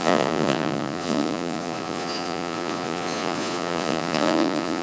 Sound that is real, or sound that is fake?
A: fake